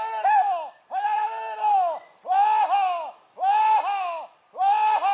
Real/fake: real